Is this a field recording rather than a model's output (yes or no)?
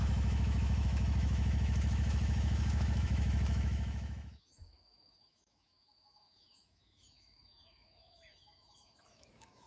no